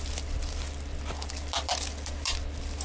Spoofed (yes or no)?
no